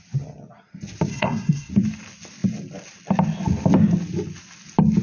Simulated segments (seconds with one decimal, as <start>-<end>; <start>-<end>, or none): 1.1-1.7